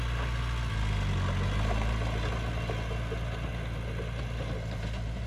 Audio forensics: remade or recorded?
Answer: recorded